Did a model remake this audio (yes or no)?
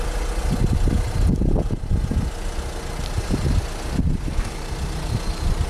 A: no